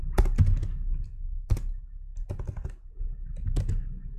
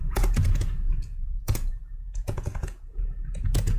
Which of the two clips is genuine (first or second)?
first